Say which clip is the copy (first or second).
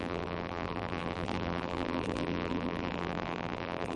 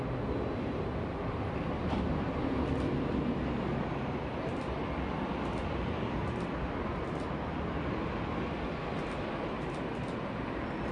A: first